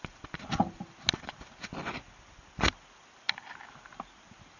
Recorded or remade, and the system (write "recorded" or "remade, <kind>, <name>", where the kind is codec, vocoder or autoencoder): recorded